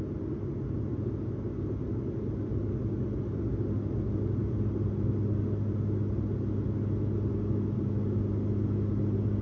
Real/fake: real